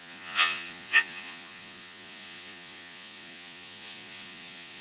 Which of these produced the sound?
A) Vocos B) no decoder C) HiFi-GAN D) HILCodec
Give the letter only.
A